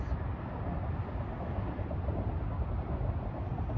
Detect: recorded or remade recorded